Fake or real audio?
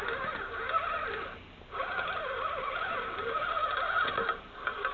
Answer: real